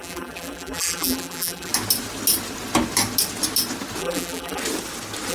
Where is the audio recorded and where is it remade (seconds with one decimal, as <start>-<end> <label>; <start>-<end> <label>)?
0.0-1.7 remade; 1.7-4.0 recorded; 4.0-4.6 remade; 4.6-5.3 recorded